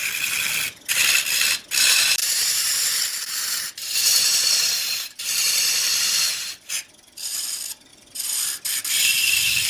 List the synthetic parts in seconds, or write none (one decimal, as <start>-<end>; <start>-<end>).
2.2-6.5